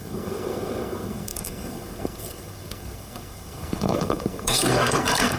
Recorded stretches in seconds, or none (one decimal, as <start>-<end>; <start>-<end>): none